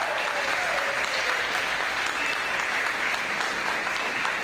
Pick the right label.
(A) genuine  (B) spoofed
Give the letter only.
A